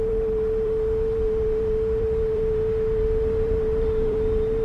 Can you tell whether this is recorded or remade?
remade